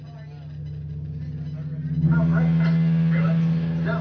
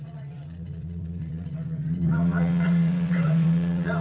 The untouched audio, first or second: first